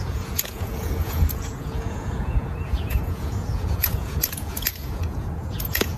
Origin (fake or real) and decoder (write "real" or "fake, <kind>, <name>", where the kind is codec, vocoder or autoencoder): fake, vocoder, Vocos